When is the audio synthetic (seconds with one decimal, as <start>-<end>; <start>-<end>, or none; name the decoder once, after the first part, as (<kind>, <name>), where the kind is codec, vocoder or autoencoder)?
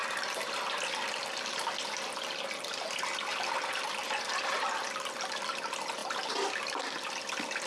none